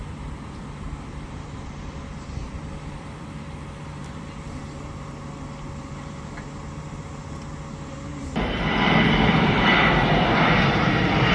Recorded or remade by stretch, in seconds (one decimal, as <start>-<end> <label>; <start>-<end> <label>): 0.0-4.2 remade; 4.2-8.1 recorded; 8.1-10.6 remade; 10.6-11.3 recorded